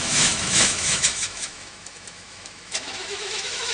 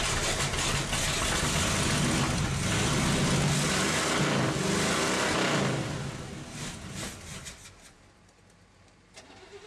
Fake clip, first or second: first